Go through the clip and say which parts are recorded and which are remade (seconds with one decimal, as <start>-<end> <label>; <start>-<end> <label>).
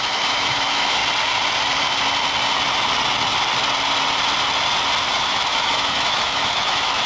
0.0-1.0 remade; 1.0-5.1 recorded; 5.1-7.1 remade